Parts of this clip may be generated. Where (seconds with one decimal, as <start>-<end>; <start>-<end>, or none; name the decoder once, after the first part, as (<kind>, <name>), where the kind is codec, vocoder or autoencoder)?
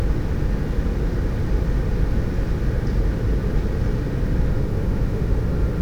4.7-5.3 (autoencoder, DAC-VAE)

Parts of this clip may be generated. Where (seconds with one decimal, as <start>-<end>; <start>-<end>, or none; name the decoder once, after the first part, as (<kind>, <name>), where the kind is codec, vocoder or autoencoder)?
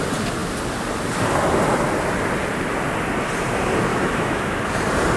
3.9-4.6 (autoencoder, DAC-VAE)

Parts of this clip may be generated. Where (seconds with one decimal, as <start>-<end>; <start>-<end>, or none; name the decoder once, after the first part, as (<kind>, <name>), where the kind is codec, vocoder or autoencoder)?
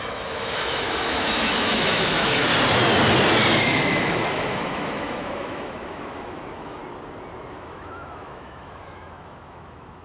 0.0-2.5 (autoencoder, DAC-VAE); 3.6-6.8; 7.5-10.0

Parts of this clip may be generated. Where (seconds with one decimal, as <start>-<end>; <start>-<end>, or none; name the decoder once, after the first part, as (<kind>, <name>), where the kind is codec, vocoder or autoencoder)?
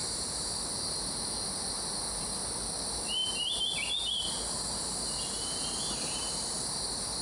none